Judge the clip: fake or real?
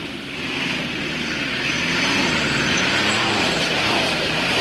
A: fake